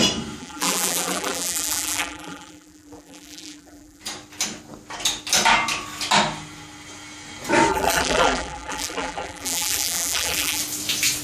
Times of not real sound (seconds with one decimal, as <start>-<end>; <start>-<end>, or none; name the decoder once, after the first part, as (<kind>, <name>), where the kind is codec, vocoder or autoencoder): 0.4-4.0 (vocoder, BigVGAN v2); 7.7-10.6